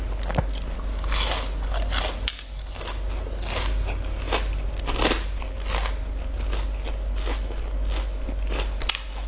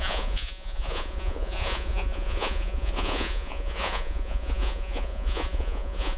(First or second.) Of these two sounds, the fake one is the second